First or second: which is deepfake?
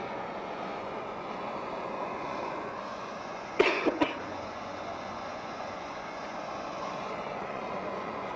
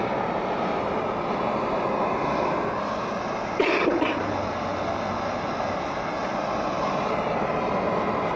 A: first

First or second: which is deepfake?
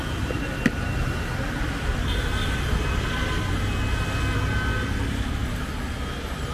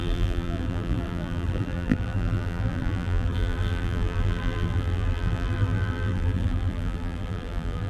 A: second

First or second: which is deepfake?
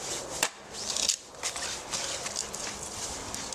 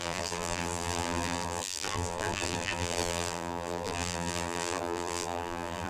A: second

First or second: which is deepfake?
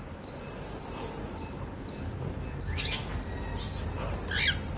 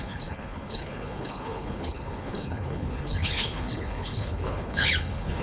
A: second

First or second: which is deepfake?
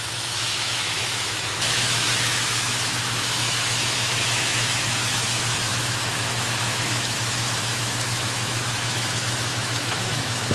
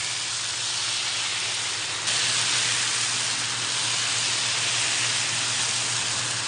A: first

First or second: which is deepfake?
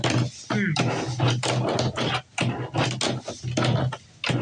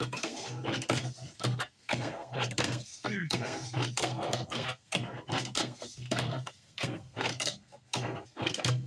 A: second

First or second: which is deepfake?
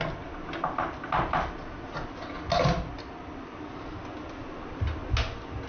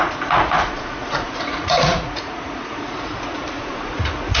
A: second